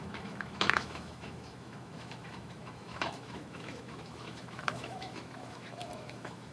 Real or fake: fake